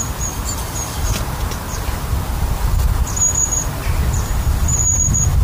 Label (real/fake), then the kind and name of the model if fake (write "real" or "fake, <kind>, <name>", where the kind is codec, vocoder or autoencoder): fake, vocoder, BigVGAN v2